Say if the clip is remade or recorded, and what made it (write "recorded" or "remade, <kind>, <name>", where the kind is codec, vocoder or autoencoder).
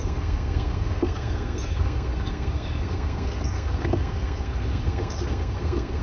remade, codec, SNAC